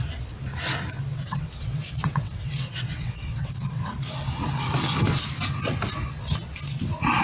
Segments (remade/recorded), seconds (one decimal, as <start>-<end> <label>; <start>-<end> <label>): 0.0-1.1 recorded; 1.1-3.9 remade; 3.9-7.2 recorded

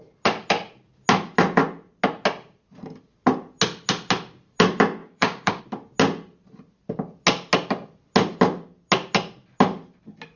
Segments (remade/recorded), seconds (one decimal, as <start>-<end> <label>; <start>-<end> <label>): 0.0-5.0 recorded; 5.0-5.6 remade; 5.6-10.4 recorded

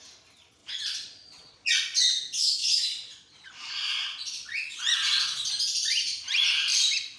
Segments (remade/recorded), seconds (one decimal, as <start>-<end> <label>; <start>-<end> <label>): 0.0-0.6 recorded; 0.6-2.0 remade; 2.0-2.6 recorded; 2.6-5.5 remade; 5.5-7.2 recorded

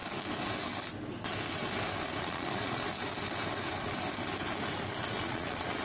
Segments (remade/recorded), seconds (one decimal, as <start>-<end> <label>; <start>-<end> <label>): 0.0-2.2 recorded; 2.2-2.8 remade; 2.8-5.0 recorded; 5.0-5.8 remade

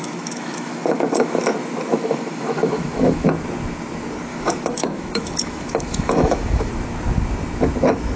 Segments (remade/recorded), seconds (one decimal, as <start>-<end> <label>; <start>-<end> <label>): 0.0-1.4 remade; 1.4-1.9 recorded; 1.9-3.3 remade; 3.3-4.3 recorded; 4.3-6.7 remade; 6.7-8.2 recorded

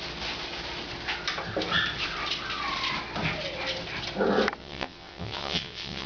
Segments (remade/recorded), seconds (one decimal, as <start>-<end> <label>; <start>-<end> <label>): 0.0-4.6 recorded; 4.6-6.1 remade